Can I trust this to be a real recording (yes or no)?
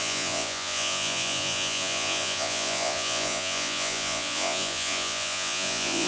no